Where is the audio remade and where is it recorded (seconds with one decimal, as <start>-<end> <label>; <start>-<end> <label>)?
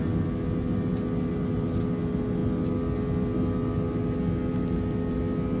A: 0.0-5.6 recorded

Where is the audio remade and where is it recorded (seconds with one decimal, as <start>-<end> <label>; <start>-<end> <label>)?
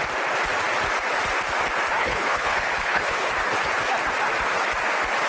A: 0.0-2.0 recorded; 2.0-3.3 remade; 3.3-5.3 recorded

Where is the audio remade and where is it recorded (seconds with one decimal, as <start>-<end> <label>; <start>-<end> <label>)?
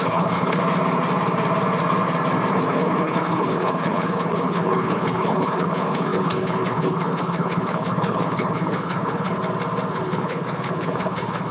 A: 0.0-0.6 remade; 0.6-2.5 recorded; 2.5-9.4 remade; 9.4-9.9 recorded; 9.9-11.5 remade